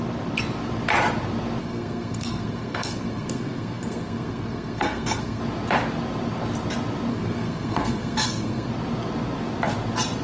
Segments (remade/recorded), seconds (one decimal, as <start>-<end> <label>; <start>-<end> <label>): 0.0-1.6 recorded; 1.6-5.4 remade; 5.4-7.1 recorded; 7.1-8.7 remade; 8.7-10.2 recorded